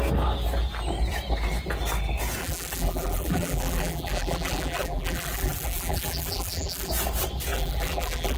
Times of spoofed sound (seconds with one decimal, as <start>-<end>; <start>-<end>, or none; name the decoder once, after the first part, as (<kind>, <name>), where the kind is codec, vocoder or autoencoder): 2.4-6.9 (vocoder, BigVGAN v2); 7.5-8.4